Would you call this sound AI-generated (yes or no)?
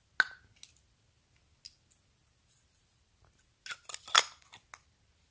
no